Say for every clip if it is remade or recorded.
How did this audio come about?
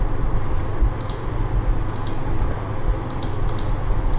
recorded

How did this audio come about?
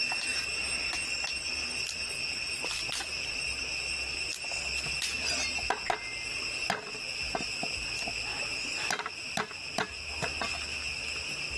recorded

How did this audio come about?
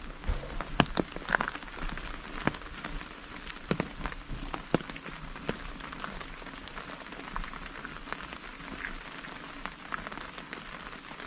recorded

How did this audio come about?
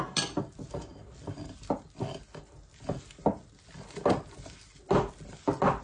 recorded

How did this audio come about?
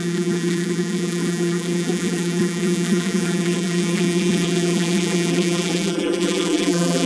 remade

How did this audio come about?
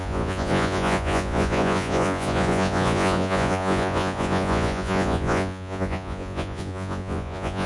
remade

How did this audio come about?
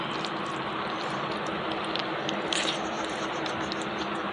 recorded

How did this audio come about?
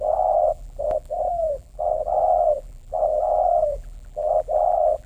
remade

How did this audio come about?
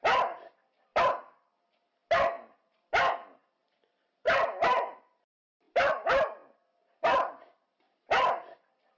recorded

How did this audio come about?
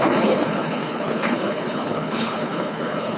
remade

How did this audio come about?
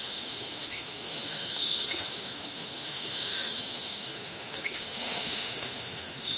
remade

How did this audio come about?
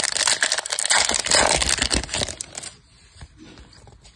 recorded